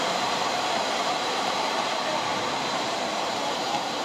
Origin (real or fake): fake